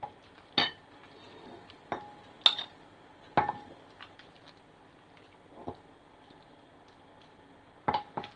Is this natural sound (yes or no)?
yes